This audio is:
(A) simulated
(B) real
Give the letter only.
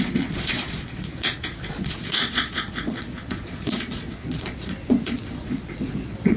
A